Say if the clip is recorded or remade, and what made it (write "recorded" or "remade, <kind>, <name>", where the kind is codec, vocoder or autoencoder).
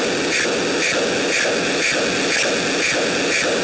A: recorded